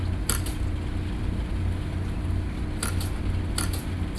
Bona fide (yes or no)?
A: yes